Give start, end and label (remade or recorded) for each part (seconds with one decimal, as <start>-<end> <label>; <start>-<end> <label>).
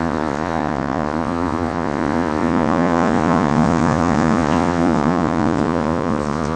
0.0-6.6 remade